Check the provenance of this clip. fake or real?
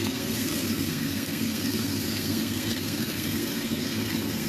fake